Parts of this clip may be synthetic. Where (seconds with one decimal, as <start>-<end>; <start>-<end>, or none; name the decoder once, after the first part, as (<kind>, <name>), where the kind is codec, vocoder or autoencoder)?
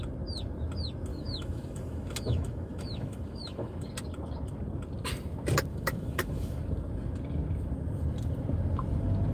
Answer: 1.1-3.9 (autoencoder, DAC-VAE); 5.7-6.6